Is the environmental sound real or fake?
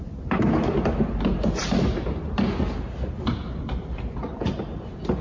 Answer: real